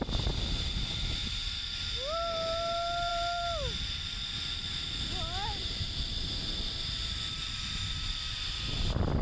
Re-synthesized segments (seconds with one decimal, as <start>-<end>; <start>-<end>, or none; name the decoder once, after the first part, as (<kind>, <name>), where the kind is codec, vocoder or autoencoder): none